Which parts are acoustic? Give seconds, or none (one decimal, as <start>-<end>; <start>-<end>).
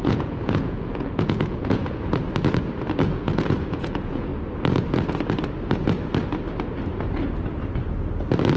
2.2-3.1; 4.3-8.6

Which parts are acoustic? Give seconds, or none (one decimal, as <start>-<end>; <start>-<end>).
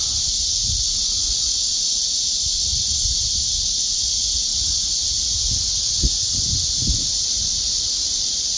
0.6-1.6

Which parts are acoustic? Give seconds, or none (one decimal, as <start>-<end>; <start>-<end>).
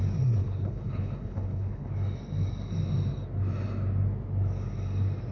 0.0-0.4; 1.9-5.3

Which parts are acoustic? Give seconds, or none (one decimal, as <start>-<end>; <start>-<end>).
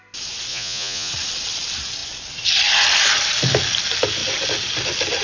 0.0-0.5; 1.1-5.2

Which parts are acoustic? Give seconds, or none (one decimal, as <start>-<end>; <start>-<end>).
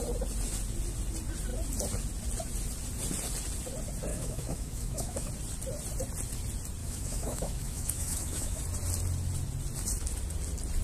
0.0-4.1; 5.3-6.8; 8.6-10.8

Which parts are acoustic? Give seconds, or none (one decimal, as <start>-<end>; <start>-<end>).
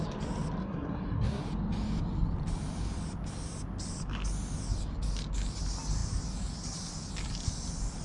0.0-0.6; 1.4-8.0